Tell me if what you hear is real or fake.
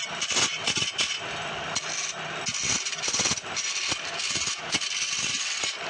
real